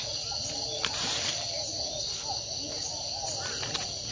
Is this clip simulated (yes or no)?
no